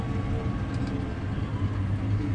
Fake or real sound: real